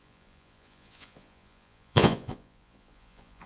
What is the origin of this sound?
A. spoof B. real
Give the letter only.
A